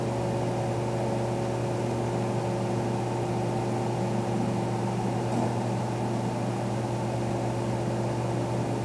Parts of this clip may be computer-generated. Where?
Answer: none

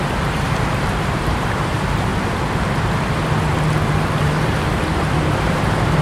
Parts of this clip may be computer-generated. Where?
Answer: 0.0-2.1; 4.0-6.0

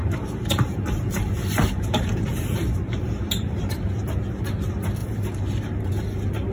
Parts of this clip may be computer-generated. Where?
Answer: 0.0-3.9; 5.0-5.9